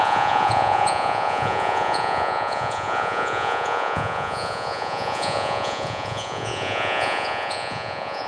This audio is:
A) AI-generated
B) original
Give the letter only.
A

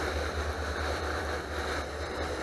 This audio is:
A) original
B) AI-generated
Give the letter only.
A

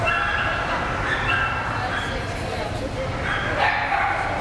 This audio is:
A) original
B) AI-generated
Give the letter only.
A